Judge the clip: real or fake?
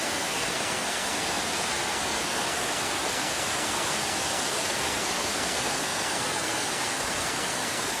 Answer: fake